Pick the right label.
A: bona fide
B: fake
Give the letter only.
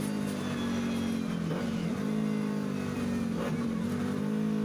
A